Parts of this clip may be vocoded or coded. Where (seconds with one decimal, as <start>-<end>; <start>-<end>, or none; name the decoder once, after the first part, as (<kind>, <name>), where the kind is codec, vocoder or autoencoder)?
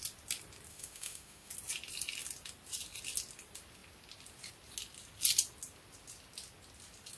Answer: 0.7-1.5 (autoencoder, DAC-VAE)